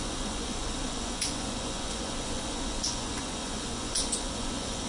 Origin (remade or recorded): remade